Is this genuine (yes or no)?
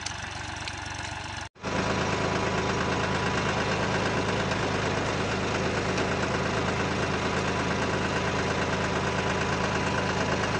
yes